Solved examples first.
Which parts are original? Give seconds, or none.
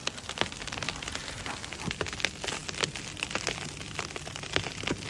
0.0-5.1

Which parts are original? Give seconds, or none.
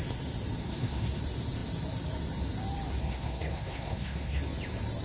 0.0-0.6; 1.2-3.0; 4.4-5.0